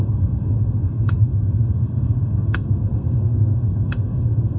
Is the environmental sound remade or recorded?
remade